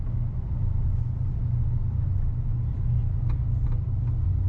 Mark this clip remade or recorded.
recorded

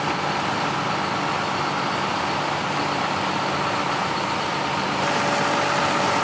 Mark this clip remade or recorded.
recorded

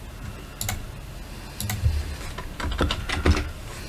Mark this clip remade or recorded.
recorded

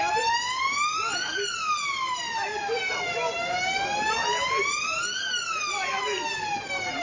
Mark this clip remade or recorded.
recorded